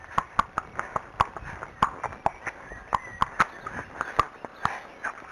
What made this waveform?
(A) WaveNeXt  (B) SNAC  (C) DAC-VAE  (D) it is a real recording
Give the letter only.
D